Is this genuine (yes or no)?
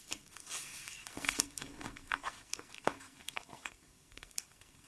no